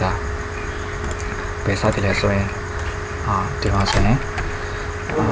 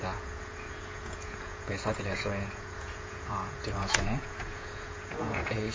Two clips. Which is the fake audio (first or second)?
second